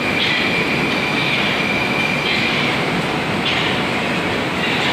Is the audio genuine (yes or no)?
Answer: yes